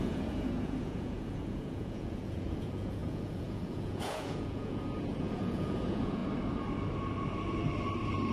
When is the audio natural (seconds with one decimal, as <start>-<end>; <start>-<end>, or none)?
6.2-8.3